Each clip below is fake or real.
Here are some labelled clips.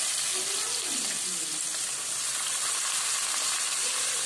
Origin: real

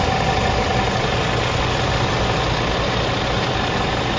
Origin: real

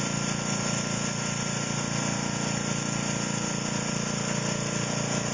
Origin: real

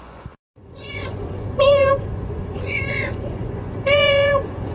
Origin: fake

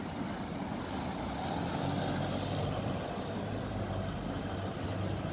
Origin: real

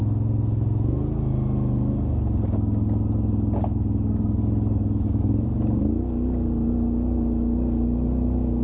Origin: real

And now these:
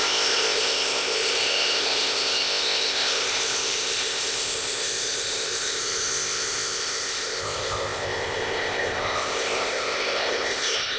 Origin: fake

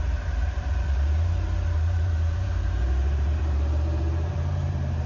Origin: fake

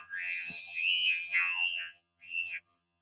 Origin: fake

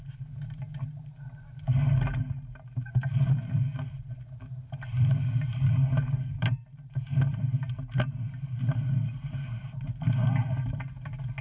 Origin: real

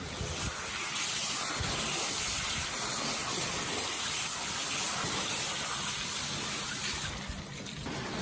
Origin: real